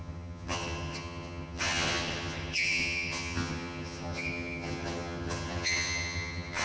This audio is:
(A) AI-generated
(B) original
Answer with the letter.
A